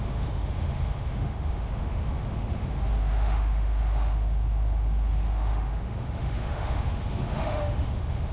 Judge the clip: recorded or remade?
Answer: remade